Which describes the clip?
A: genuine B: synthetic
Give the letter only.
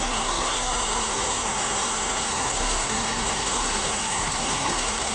B